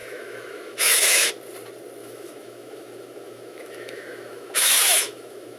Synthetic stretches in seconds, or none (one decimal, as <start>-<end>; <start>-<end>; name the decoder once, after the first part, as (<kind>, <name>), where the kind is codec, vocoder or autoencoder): 0.0-1.3 (autoencoder, DAC-VAE); 2.0-5.6